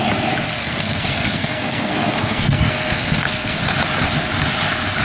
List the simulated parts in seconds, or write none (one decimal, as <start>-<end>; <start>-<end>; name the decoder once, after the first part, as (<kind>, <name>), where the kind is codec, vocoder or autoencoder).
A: 0.6-3.6 (codec, SNAC)